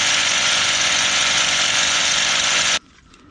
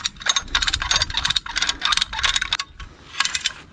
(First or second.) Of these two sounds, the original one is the second